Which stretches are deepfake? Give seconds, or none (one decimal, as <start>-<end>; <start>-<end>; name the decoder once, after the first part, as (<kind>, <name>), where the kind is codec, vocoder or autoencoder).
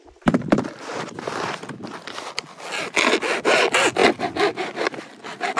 none